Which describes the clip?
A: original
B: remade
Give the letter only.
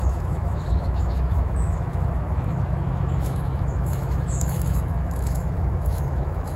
B